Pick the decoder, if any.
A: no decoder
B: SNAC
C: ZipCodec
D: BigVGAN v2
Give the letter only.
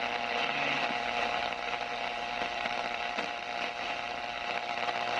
A